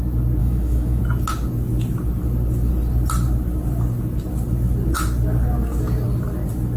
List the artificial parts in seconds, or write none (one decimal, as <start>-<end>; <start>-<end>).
0.4-1.0